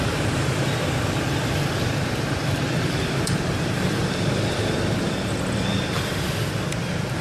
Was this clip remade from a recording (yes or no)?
yes